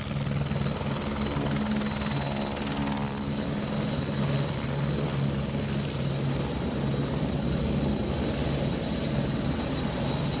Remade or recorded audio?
recorded